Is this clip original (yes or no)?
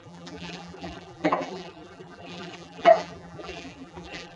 no